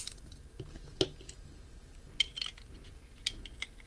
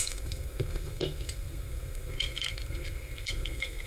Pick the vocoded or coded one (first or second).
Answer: second